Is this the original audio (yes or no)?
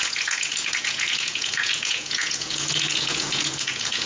no